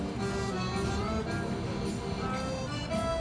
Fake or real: real